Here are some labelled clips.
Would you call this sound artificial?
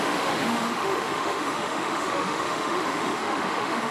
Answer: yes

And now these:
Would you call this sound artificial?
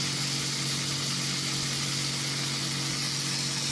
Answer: no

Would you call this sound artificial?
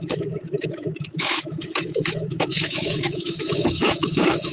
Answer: yes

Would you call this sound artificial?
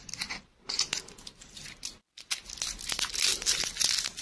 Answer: no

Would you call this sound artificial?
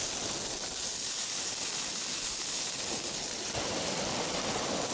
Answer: no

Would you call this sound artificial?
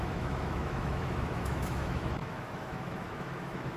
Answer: yes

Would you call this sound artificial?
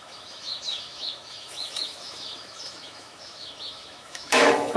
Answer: yes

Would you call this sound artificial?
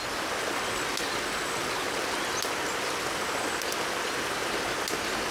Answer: no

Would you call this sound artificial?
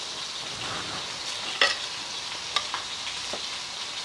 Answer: no